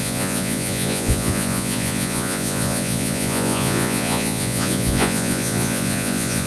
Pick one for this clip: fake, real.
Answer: fake